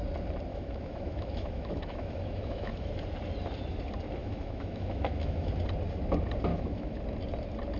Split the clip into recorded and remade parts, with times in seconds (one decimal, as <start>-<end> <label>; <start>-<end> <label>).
0.0-0.5 recorded; 0.5-2.9 remade; 2.9-4.2 recorded; 4.2-5.5 remade; 5.5-6.5 recorded; 6.5-7.0 remade; 7.0-7.8 recorded